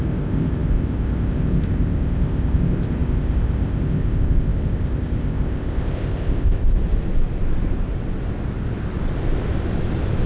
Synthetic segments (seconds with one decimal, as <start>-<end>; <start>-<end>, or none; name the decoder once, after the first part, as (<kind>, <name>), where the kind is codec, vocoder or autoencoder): 0.0-6.6 (codec, ZipCodec)